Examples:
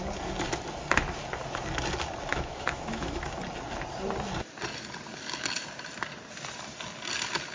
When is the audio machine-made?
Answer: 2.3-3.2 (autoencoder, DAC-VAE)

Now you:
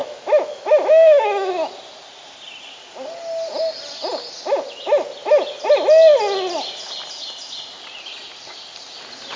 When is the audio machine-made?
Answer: 0.0-1.5 (autoencoder, DAC-VAE)

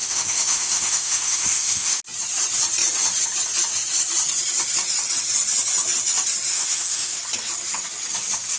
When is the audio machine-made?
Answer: 0.0-2.0 (autoencoder, DAC-VAE); 6.5-7.2

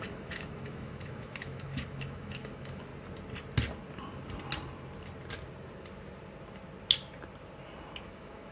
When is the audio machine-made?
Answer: 0.0-2.9 (autoencoder, DAC-VAE); 8.0-8.5